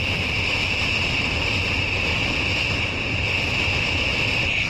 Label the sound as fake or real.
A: fake